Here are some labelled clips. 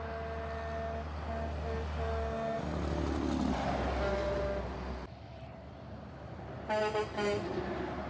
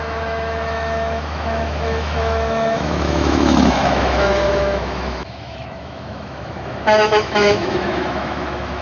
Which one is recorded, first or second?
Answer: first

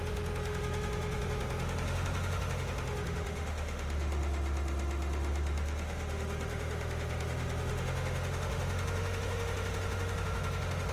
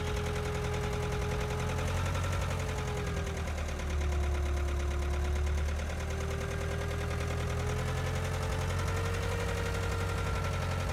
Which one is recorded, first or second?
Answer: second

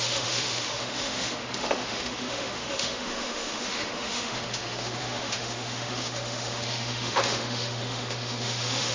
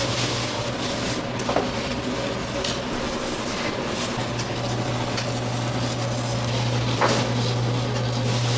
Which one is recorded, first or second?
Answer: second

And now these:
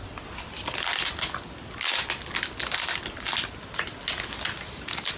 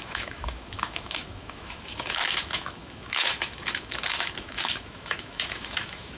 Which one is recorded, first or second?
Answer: first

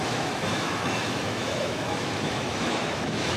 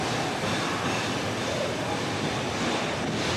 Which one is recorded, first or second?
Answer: second